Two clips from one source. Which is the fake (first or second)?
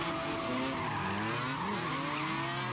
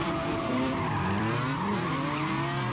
second